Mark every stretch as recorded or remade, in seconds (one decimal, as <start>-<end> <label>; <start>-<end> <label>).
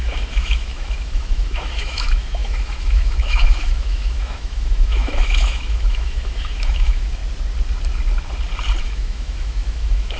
0.0-7.2 remade; 7.2-8.8 recorded; 8.8-10.2 remade